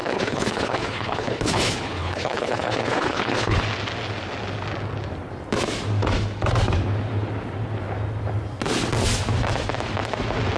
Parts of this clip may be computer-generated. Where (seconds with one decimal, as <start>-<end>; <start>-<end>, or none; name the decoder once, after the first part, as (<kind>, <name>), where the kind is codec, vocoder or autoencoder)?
0.0-3.6 (codec, HILCodec)